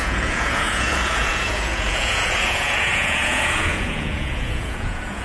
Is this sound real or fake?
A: fake